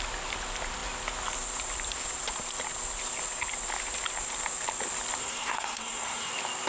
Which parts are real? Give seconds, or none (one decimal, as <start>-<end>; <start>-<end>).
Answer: 0.0-5.2; 6.3-6.7